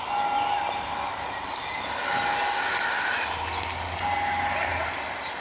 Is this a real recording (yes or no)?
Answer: yes